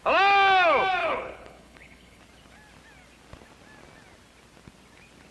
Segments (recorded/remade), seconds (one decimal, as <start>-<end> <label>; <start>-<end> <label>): 0.0-1.0 recorded; 1.0-2.2 remade; 2.2-5.3 recorded